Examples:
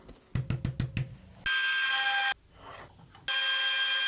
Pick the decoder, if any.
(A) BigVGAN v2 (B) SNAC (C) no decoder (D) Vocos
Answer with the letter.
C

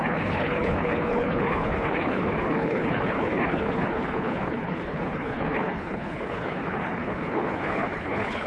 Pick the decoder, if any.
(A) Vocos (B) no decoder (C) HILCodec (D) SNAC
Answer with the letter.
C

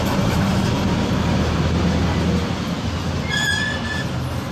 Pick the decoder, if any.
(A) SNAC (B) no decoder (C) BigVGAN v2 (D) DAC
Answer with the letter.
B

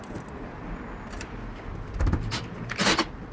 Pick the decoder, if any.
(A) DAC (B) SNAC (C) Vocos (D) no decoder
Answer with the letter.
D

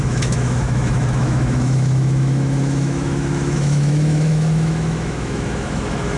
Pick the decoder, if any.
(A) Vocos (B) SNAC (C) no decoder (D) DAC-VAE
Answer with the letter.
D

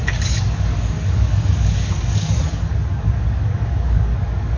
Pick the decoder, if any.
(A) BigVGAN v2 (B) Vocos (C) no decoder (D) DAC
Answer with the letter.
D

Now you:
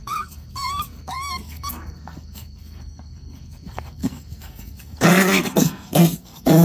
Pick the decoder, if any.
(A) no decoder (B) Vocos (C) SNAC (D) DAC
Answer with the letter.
C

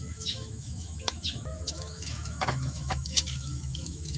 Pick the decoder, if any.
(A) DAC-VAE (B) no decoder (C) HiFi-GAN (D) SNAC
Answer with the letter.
A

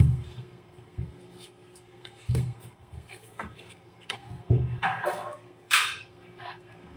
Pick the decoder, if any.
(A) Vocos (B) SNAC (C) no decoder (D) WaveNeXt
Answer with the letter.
B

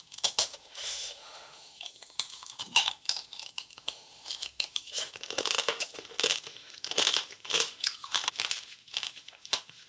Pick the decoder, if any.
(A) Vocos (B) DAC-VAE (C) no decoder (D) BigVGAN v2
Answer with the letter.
B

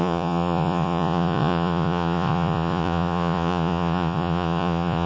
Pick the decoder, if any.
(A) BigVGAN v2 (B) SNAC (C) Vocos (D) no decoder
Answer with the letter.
C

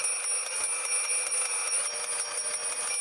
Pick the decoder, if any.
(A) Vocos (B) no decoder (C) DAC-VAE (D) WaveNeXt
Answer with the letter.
B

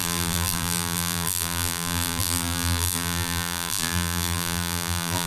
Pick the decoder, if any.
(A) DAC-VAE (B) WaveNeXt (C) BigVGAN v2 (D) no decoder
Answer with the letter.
C